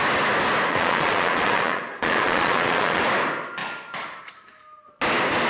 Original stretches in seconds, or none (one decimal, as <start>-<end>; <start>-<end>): 0.0-0.7; 3.0-5.5